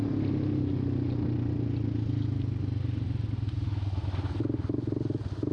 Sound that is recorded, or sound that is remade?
recorded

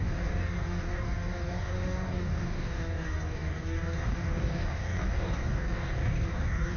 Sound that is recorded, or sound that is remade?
remade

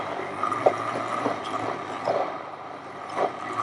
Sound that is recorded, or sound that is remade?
recorded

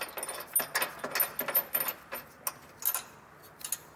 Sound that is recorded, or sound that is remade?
recorded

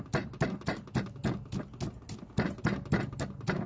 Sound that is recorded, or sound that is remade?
recorded